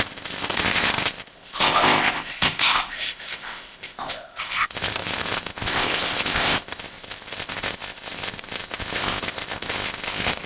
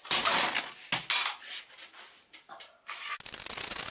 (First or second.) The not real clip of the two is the first